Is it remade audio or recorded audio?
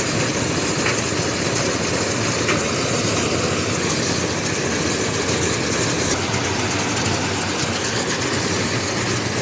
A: recorded